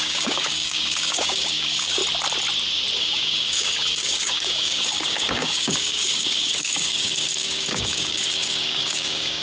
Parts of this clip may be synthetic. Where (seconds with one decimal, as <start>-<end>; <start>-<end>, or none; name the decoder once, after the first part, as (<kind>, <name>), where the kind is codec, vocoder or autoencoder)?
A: 0.0-2.0 (codec, DAC); 3.0-9.4